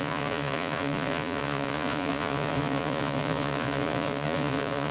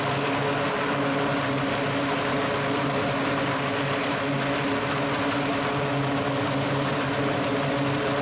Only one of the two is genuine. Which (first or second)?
second